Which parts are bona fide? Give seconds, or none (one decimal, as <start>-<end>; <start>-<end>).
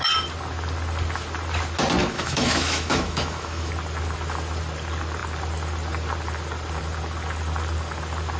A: 0.0-2.0; 3.7-8.4